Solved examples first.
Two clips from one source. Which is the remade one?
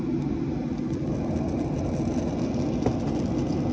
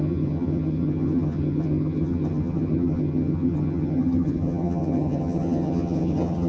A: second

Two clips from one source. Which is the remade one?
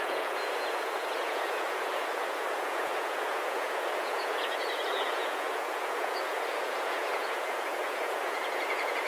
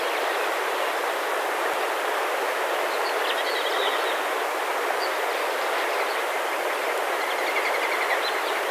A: first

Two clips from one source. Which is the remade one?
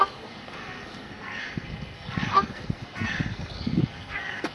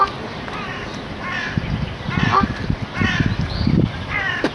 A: first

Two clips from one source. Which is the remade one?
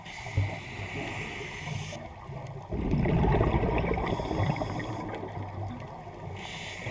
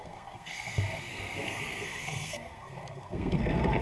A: second